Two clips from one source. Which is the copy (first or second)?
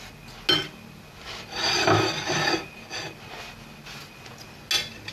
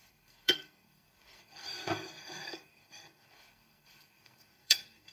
second